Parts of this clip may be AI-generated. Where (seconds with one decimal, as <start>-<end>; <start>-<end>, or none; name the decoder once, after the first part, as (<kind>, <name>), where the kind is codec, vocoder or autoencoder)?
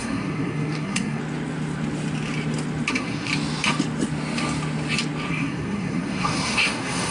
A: 0.0-1.2 (codec, SNAC); 2.9-3.3; 5.3-7.1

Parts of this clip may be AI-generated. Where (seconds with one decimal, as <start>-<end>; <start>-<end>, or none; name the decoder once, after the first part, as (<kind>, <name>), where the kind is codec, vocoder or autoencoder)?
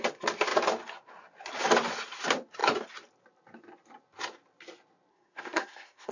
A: 5.1-6.1 (codec, SNAC)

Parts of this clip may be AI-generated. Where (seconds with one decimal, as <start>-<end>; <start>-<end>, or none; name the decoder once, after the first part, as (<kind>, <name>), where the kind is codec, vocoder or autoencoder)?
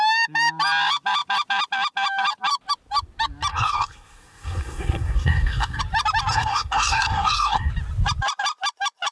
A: 3.5-5.8 (codec, SNAC); 6.3-7.7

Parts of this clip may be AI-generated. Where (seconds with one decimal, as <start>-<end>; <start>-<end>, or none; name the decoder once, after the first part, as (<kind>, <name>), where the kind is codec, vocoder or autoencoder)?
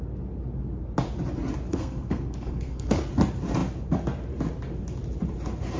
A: 1.7-3.1 (codec, SNAC)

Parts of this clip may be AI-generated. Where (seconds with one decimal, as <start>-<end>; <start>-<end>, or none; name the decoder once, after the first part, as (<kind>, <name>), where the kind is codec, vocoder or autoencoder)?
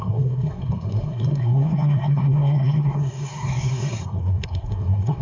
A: 0.0-5.2 (codec, SNAC)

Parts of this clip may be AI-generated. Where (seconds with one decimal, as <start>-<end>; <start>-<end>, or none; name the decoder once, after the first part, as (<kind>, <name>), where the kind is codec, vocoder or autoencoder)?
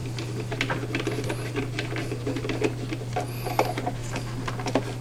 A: none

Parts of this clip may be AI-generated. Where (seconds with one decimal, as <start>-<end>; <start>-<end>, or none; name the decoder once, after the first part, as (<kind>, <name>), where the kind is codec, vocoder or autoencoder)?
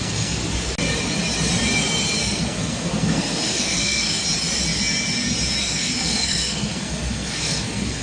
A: 0.0-0.4 (codec, SNAC); 2.2-4.2; 5.6-8.0